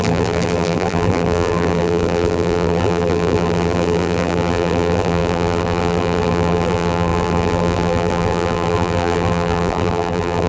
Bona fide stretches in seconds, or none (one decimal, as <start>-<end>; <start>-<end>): none